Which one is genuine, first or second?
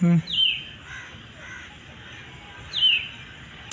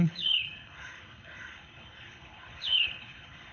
first